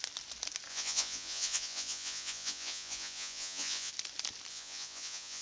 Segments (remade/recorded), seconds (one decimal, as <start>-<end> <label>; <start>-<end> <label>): 0.0-0.7 recorded; 0.7-3.9 remade; 3.9-4.5 recorded; 4.5-5.4 remade